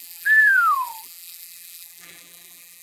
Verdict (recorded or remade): remade